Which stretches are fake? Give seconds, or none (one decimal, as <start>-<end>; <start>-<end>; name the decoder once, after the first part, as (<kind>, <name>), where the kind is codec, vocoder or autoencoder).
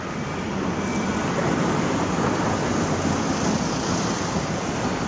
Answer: none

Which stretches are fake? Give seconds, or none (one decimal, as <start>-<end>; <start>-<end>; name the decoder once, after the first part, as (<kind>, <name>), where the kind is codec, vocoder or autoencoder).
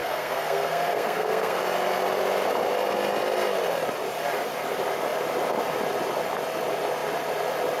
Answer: 0.0-1.6 (codec, SNAC)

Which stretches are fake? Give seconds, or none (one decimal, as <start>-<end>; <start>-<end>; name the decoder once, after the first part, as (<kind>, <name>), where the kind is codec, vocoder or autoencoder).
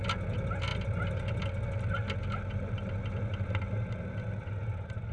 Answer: none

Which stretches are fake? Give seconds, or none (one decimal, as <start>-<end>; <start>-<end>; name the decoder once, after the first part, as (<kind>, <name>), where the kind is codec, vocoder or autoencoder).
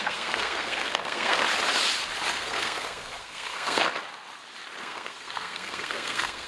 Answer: 0.0-1.4 (codec, SNAC); 2.3-3.9; 4.8-6.5